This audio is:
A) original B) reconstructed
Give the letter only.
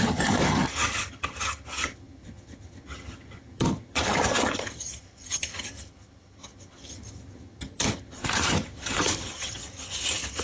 B